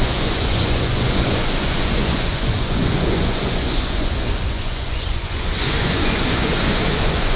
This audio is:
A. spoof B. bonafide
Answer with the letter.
A